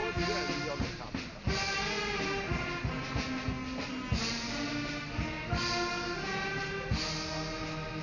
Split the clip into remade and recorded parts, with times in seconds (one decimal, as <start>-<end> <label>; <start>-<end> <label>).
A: 0.0-8.0 recorded